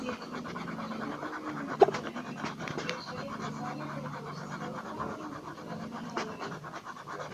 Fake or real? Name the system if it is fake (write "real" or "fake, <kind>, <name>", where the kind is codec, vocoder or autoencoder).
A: real